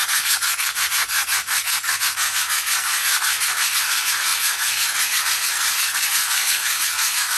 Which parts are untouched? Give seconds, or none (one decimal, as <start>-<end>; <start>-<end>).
none